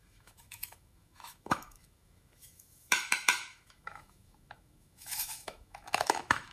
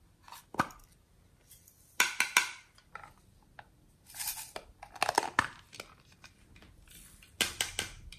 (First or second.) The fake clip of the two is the first